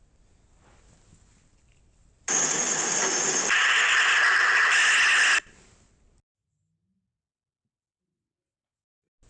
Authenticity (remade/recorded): recorded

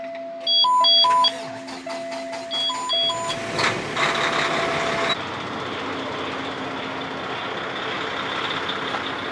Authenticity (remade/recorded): recorded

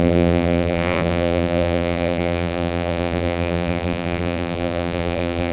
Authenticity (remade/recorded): remade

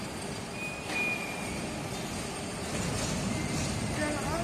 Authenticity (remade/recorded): recorded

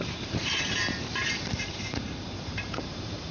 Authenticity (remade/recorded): remade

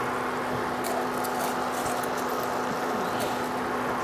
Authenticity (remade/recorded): recorded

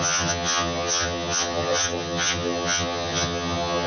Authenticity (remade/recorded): remade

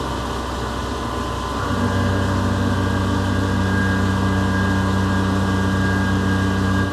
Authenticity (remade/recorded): recorded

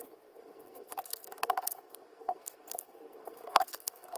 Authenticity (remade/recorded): remade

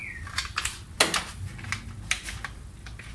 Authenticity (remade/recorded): recorded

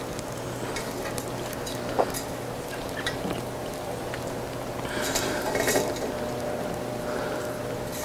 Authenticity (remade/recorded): recorded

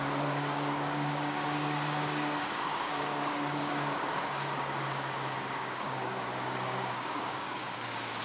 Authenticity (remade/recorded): remade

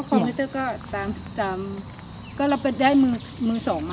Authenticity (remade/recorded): recorded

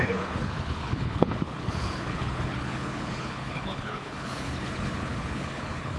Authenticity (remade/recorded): remade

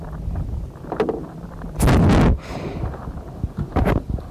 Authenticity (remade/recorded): recorded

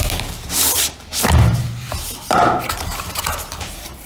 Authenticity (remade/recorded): remade